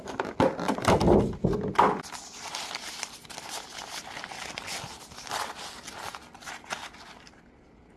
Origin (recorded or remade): recorded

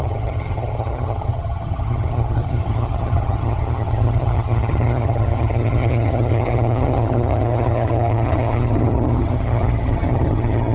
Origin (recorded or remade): remade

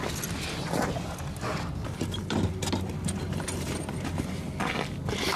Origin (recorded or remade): recorded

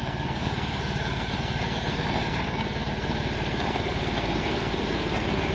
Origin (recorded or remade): remade